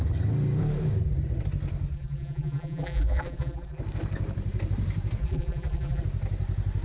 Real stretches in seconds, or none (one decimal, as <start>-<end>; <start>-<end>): 0.0-1.9; 3.8-5.2; 6.0-6.8

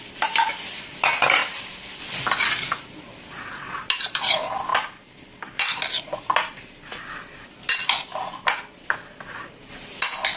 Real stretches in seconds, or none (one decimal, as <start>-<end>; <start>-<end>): 0.0-10.4

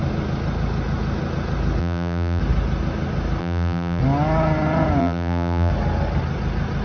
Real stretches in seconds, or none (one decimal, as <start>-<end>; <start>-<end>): 0.0-1.8; 2.4-3.4; 4.0-5.0; 5.7-6.8

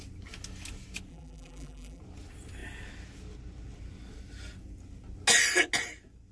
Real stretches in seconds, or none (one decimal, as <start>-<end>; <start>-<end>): 0.0-1.1; 2.0-6.3

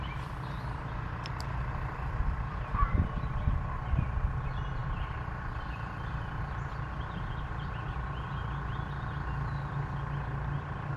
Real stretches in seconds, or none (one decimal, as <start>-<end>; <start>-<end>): 0.0-4.8; 6.4-11.0

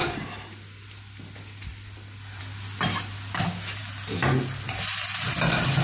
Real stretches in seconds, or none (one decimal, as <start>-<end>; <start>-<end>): 0.0-5.8

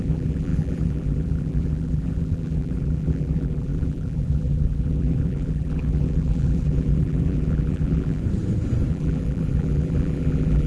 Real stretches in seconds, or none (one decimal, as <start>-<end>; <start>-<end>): 8.2-8.9